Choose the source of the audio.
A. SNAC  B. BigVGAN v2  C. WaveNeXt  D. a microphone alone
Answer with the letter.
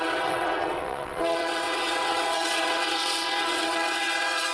C